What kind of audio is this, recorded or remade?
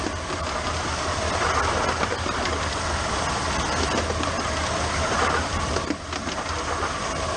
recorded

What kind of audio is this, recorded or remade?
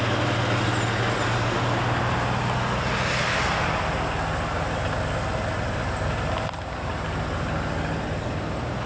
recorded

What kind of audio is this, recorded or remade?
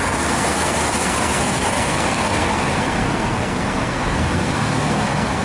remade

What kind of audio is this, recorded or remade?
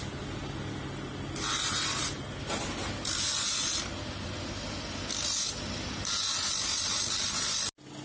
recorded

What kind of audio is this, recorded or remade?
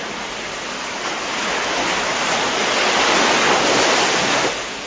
recorded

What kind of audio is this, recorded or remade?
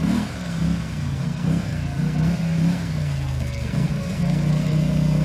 remade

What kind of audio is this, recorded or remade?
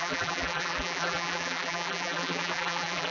remade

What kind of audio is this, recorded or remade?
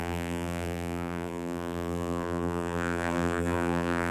remade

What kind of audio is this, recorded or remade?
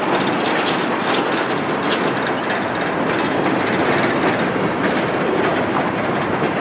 recorded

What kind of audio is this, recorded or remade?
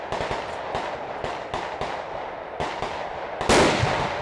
recorded